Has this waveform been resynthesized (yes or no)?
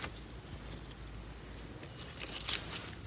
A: no